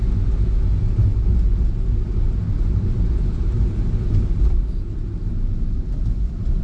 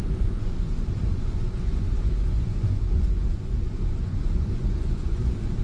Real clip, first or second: first